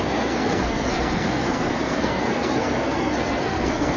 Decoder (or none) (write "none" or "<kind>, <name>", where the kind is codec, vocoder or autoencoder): codec, SNAC